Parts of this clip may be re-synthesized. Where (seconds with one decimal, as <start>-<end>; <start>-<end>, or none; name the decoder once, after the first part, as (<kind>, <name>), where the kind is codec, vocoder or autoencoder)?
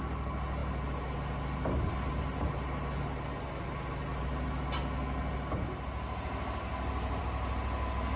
none